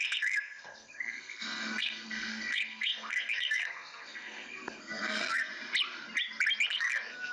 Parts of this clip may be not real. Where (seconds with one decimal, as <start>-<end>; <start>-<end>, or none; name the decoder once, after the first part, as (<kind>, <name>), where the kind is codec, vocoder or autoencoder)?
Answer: 0.0-5.5 (codec, SNAC); 6.7-7.3